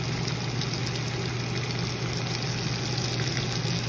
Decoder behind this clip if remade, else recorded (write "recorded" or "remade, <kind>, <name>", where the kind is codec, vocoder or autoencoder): recorded